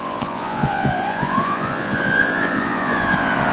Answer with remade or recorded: remade